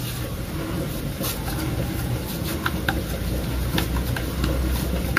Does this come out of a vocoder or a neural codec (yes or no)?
no